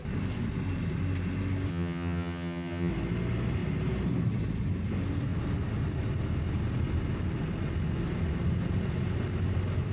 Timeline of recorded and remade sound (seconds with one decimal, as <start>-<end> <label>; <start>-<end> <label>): 0.0-1.7 recorded; 1.7-2.9 remade; 2.9-9.9 recorded